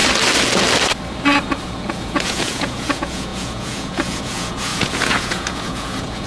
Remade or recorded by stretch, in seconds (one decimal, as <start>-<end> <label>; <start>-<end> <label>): 0.0-1.7 recorded; 1.7-6.3 remade